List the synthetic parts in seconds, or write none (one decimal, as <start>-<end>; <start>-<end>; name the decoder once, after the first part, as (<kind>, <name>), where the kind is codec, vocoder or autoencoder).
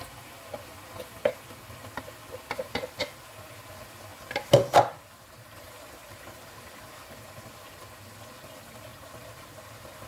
4.1-7.0 (vocoder, BigVGAN v2); 8.9-10.1